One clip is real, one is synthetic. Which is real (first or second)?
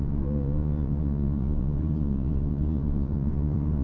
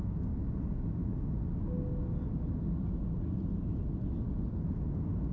second